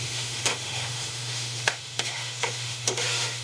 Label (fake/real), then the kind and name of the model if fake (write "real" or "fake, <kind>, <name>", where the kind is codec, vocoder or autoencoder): fake, autoencoder, DAC-VAE